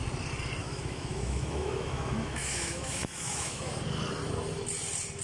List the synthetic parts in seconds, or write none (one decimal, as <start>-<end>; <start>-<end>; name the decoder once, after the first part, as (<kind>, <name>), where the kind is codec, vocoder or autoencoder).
0.6-3.7 (autoencoder, DAC-VAE)